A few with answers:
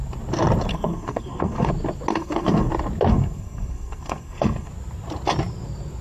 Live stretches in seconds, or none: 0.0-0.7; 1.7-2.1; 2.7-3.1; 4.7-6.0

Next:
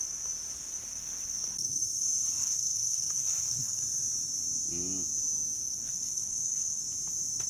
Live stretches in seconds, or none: 0.0-0.9; 1.8-2.4; 3.8-5.6; 6.8-7.5

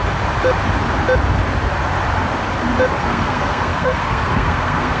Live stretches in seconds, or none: 0.0-3.0

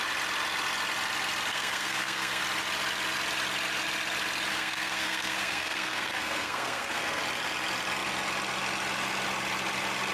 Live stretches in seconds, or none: 0.0-1.5; 2.4-4.5; 7.2-10.1

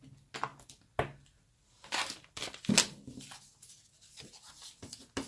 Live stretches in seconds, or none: 0.0-5.3

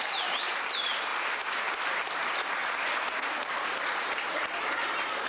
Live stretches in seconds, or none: 0.0-5.3